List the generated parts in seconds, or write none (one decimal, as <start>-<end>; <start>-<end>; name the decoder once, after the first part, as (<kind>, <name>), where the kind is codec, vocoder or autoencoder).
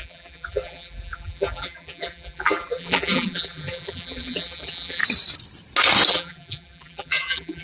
0.0-5.0 (vocoder, BigVGAN v2); 6.1-7.6